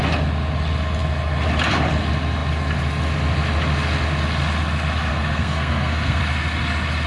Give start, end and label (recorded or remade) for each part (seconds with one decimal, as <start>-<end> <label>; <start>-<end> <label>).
0.0-5.1 recorded; 5.1-6.2 remade; 6.2-7.1 recorded